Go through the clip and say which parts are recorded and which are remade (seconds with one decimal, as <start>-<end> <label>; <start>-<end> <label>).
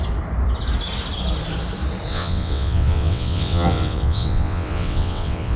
0.0-2.1 recorded; 2.1-5.6 remade